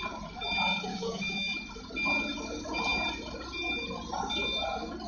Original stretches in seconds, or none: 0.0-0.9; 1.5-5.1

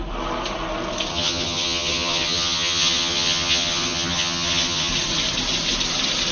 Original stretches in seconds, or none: 0.0-1.1; 4.9-6.3